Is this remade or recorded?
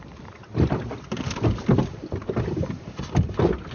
recorded